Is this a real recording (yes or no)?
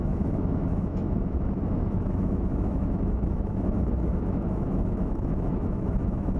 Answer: no